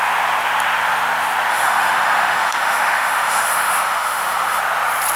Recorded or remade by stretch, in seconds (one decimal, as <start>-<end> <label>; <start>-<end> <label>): 0.0-1.5 recorded; 1.5-4.6 remade; 4.6-5.2 recorded